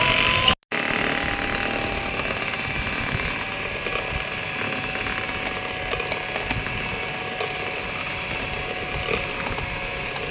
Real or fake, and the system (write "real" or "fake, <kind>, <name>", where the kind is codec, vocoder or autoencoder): real